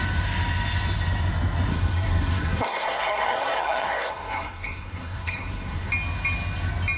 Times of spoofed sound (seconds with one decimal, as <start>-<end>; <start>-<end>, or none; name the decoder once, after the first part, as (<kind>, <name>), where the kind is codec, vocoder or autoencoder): 1.7-5.9 (codec, SNAC)